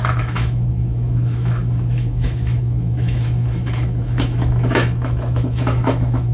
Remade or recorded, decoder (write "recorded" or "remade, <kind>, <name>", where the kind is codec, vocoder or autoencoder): remade, autoencoder, DAC-VAE